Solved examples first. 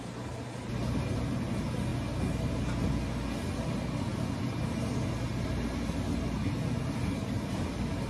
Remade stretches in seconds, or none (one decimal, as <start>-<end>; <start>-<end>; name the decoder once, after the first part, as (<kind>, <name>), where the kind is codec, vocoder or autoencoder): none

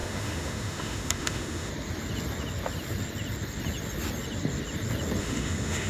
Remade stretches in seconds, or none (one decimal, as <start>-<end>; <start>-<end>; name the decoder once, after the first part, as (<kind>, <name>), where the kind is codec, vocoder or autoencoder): 0.0-1.7 (autoencoder, DAC-VAE); 5.2-5.9

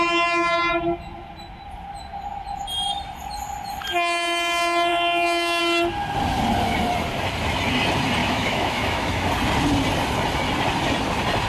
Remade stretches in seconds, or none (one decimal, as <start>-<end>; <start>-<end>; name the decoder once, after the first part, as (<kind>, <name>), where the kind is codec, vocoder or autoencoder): 4.9-5.6 (autoencoder, DAC-VAE); 8.2-9.3